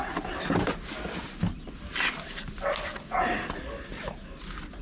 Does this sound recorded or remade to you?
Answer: recorded